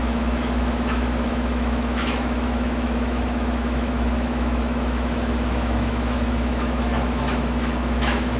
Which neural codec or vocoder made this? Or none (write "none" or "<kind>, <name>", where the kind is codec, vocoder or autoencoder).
autoencoder, DAC-VAE